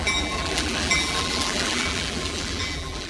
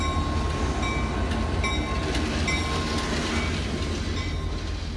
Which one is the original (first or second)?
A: second